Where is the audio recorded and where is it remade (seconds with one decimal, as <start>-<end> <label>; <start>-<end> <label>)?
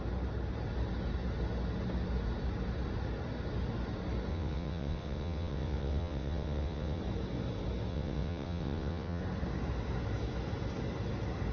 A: 0.0-4.3 recorded; 4.3-7.0 remade; 7.0-7.9 recorded; 7.9-9.2 remade; 9.2-11.5 recorded